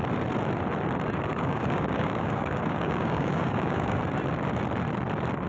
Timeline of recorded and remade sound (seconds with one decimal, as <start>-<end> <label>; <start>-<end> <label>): 0.0-1.3 recorded; 1.3-4.0 remade; 4.0-5.5 recorded